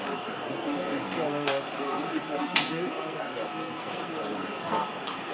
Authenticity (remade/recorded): remade